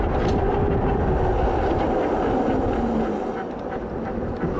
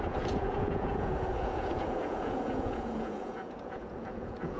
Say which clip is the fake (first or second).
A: second